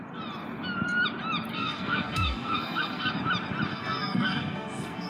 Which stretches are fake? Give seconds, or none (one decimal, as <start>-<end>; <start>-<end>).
1.5-3.1; 3.7-5.1